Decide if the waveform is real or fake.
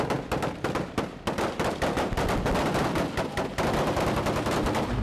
real